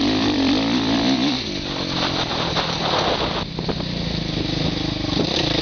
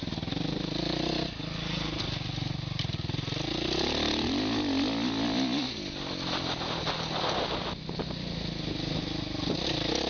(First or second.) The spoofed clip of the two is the first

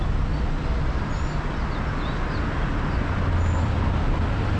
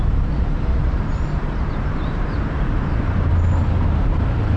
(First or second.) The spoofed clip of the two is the second